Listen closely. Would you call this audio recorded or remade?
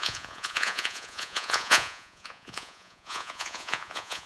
remade